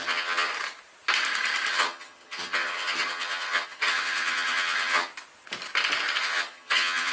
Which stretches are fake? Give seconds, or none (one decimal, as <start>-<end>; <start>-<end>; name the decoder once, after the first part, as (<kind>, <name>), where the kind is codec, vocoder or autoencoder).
0.0-0.5 (vocoder, HiFi-GAN); 1.7-5.1; 6.2-7.1